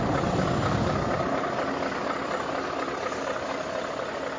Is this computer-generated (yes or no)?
no